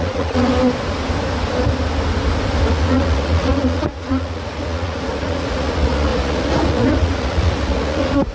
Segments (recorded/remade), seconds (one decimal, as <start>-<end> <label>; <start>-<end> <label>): 0.0-0.5 remade; 0.5-2.7 recorded; 2.7-8.3 remade